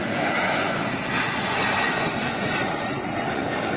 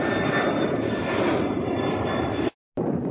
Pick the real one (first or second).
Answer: second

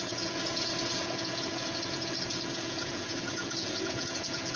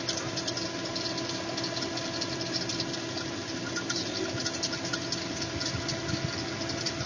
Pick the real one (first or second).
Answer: second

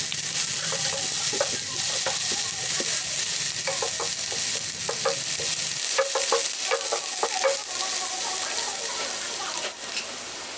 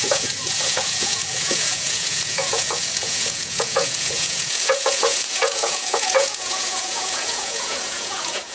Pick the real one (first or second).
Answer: first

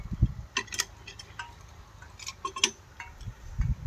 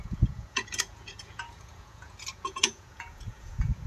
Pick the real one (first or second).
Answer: first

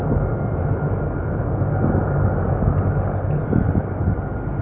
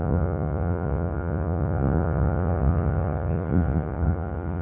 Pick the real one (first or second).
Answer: first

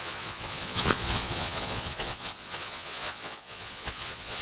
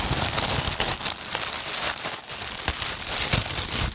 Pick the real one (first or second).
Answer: second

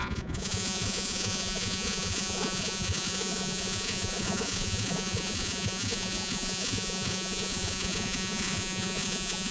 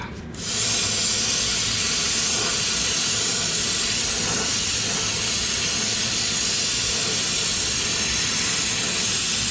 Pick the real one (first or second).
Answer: second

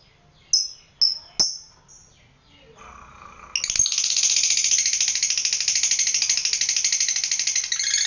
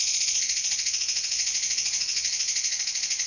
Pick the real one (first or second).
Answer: first